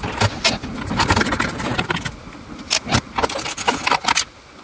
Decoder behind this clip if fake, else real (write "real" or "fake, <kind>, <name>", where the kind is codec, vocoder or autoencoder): real